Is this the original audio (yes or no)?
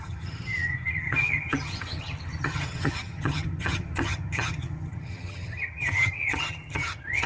no